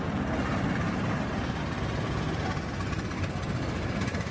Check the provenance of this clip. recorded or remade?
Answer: recorded